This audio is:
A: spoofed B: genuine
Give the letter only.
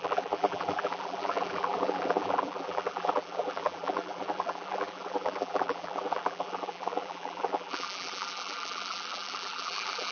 A